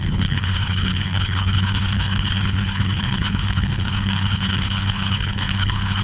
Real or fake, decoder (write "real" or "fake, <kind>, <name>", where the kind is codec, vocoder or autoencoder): fake, codec, HILCodec